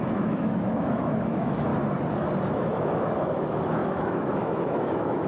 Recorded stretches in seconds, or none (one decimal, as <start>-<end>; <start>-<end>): 1.7-2.5